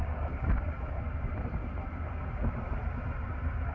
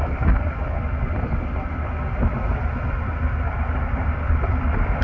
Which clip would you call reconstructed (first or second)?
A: first